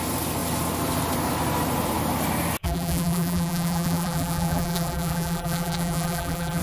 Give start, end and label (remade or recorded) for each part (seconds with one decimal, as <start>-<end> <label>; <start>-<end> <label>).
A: 0.0-2.6 recorded; 2.6-6.6 remade